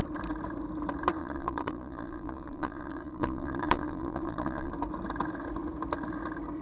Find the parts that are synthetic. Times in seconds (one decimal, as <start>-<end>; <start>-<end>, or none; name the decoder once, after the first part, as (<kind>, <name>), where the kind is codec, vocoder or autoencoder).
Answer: 1.2-4.7 (vocoder, Vocos)